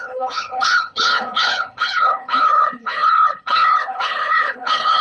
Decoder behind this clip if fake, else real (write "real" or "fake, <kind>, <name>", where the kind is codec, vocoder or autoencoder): fake, codec, HILCodec